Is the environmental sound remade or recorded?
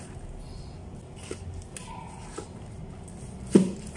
recorded